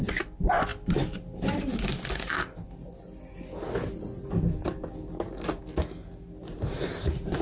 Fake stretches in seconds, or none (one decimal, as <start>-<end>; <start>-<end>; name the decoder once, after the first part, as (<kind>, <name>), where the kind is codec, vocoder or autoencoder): none